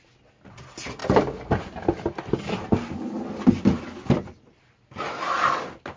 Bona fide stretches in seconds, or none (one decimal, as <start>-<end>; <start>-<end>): 0.0-6.0